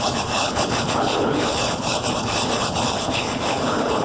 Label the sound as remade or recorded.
remade